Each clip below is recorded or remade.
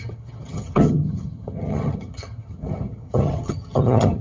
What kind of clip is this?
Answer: remade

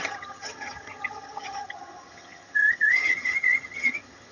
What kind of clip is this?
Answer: remade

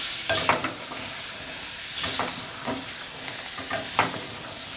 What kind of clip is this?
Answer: recorded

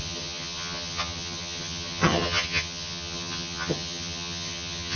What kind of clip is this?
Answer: remade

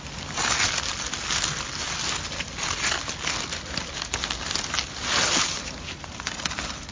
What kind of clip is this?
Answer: recorded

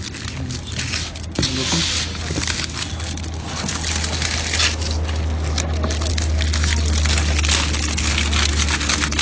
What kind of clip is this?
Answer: recorded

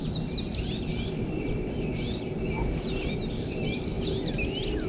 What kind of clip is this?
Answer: recorded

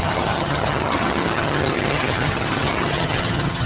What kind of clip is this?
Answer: remade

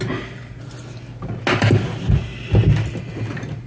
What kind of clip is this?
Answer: recorded